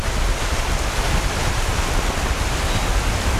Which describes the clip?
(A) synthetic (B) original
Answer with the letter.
B